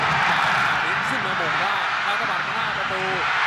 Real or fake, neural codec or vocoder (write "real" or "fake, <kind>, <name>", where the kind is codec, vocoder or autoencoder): real